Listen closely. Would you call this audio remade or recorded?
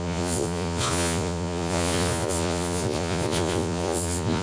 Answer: remade